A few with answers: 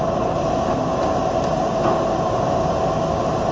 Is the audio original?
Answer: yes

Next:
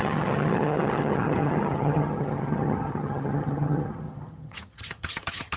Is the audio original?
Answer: no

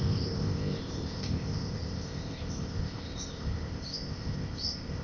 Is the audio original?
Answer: no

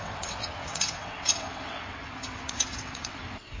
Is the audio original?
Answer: no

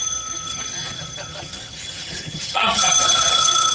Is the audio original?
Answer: no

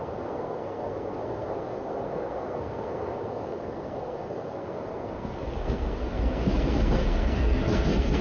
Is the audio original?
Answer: no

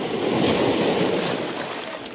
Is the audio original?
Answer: yes